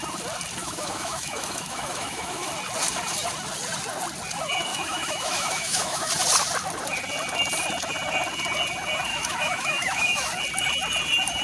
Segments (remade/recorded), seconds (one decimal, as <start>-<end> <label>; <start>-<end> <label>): 0.0-0.6 recorded; 0.6-2.5 remade; 2.5-4.7 recorded; 4.7-6.1 remade; 6.1-9.1 recorded; 9.1-10.3 remade; 10.3-11.4 recorded